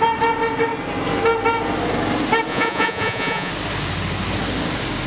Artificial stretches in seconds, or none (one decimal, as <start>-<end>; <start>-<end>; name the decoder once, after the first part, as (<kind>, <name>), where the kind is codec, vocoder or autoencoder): 2.5-3.5 (vocoder, Vocos)